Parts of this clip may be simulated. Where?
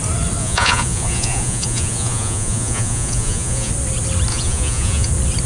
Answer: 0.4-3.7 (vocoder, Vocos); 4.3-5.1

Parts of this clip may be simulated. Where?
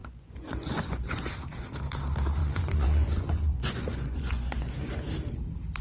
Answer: 0.0-1.7 (vocoder, Vocos); 2.4-4.9